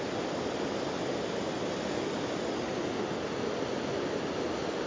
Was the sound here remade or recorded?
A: recorded